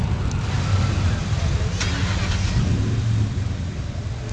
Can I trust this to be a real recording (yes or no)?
yes